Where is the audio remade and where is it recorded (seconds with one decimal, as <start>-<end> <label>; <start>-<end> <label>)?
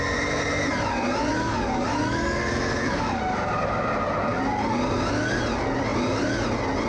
0.0-1.3 recorded; 1.3-3.2 remade; 3.2-6.9 recorded